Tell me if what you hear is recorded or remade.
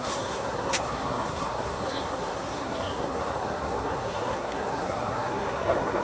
remade